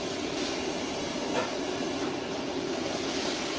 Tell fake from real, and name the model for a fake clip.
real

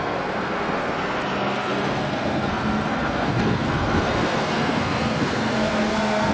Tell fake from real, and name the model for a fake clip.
fake, codec, SNAC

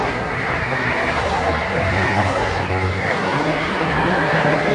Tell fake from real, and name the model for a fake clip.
fake, codec, SNAC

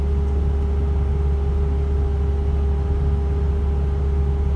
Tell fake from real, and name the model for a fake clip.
real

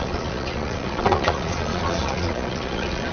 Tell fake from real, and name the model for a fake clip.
fake, vocoder, Vocos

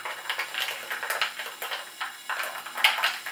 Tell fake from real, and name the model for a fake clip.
real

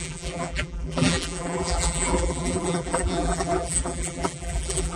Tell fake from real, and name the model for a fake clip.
fake, vocoder, BigVGAN v2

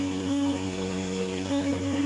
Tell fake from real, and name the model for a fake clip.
fake, codec, SNAC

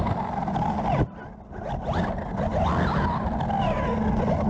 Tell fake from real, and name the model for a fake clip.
real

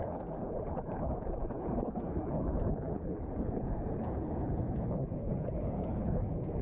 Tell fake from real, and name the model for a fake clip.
fake, codec, HILCodec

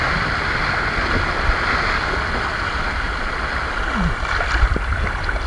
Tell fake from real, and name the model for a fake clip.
real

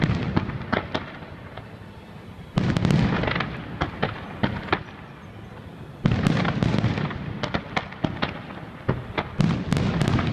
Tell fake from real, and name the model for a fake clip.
real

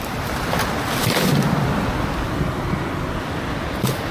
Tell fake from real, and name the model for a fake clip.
real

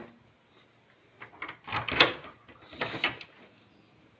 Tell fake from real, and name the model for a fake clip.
real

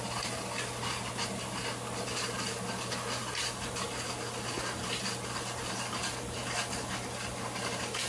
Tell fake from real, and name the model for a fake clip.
real